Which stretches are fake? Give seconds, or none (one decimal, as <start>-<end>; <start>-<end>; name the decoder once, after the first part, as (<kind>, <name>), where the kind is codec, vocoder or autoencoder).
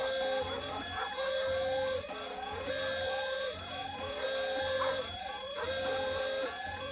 none